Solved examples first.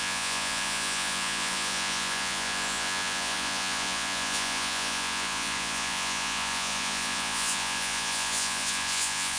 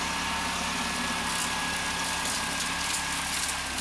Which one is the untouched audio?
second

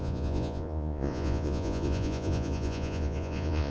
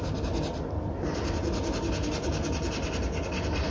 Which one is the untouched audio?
second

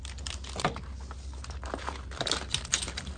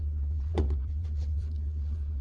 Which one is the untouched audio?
first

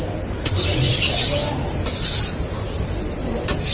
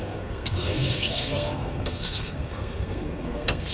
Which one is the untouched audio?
first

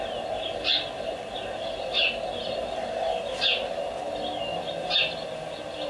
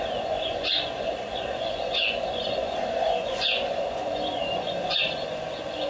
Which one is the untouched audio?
first